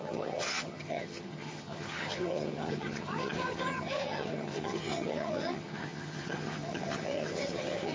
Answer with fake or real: fake